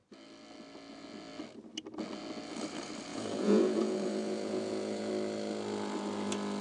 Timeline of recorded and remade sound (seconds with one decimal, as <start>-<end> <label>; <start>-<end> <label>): 0.0-3.1 recorded; 3.1-5.1 remade; 5.1-6.6 recorded